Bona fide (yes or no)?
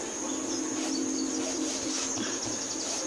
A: yes